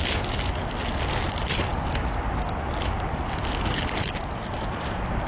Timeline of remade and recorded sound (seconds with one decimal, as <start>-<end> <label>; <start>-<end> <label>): 0.0-5.3 recorded